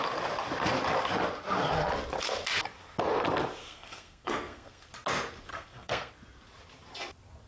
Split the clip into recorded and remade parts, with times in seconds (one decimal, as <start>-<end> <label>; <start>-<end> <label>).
0.0-3.6 recorded; 3.6-4.9 remade; 4.9-5.5 recorded; 5.5-6.1 remade; 6.1-7.5 recorded